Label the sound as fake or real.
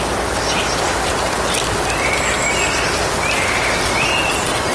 real